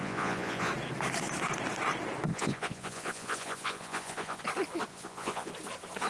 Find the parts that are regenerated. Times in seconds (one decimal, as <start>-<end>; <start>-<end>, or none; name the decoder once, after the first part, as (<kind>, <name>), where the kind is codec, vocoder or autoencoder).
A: 0.0-0.7 (vocoder, Vocos); 2.3-4.4; 4.9-5.5